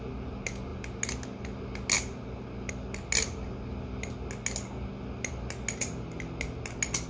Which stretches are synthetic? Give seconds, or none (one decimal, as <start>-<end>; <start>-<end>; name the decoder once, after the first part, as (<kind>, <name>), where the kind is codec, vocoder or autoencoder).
none